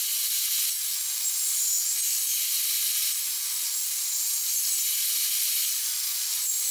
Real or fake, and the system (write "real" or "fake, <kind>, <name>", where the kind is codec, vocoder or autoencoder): real